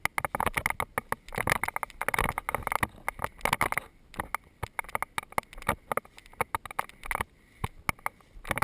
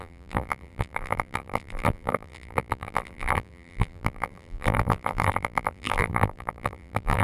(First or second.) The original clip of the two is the first